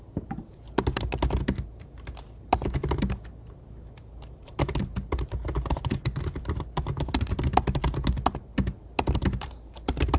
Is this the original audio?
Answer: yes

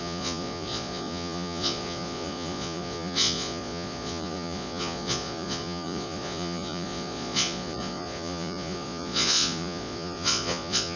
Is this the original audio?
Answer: no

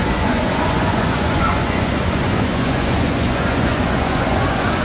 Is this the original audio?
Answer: no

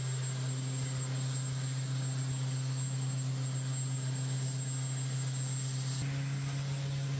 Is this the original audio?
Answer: yes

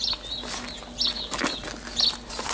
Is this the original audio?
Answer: yes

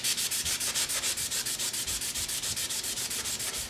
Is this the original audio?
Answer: no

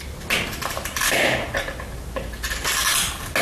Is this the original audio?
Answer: yes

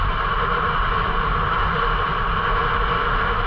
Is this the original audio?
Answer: yes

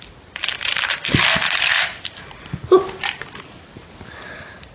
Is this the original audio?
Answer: yes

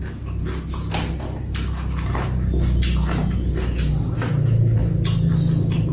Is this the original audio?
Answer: yes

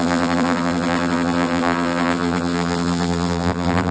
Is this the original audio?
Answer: no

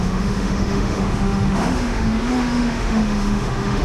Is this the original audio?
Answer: no